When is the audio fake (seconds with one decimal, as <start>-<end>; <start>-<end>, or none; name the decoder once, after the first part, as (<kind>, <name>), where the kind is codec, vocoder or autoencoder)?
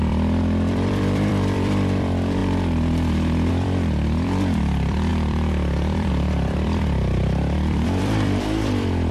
0.0-2.4 (vocoder, BigVGAN v2); 3.5-9.1